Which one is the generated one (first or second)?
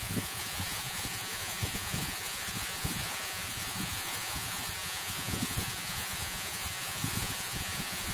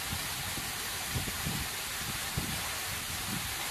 first